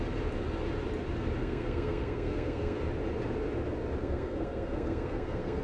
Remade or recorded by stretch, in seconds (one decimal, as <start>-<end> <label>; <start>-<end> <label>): 0.0-1.4 recorded; 1.4-2.8 remade; 2.8-4.0 recorded; 4.0-5.6 remade